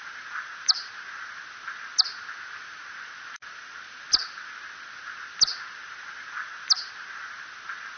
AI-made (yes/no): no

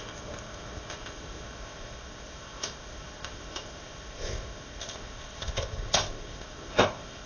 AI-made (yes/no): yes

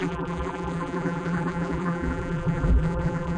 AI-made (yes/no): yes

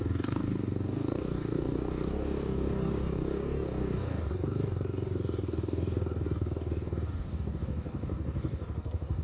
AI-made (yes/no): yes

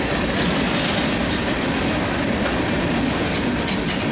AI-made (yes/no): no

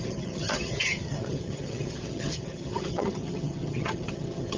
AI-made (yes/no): yes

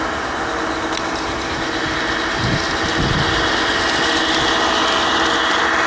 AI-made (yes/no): no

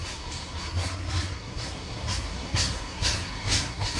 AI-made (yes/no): yes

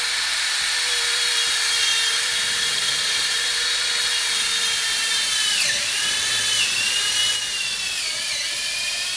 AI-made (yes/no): yes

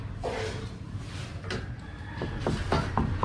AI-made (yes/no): no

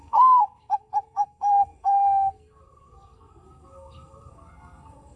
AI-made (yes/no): yes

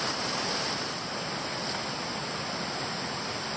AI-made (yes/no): no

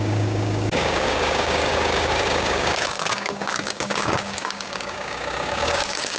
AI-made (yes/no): yes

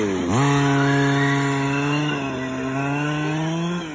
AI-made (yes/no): no